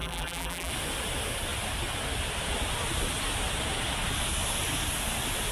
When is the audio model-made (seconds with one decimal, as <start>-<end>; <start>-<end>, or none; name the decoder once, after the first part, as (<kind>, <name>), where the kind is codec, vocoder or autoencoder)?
0.0-0.7 (vocoder, BigVGAN v2)

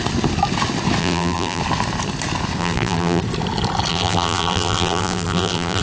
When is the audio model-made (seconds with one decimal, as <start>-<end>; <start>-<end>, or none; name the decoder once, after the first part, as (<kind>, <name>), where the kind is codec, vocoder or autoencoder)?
1.0-1.6 (vocoder, BigVGAN v2); 2.6-3.2; 3.9-5.8